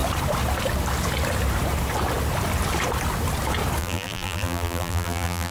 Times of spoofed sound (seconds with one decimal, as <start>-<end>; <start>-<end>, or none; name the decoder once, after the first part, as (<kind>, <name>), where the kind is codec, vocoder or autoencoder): 3.8-5.5 (vocoder, BigVGAN v2)